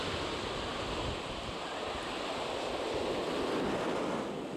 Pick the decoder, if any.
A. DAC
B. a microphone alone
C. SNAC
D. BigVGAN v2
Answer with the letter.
B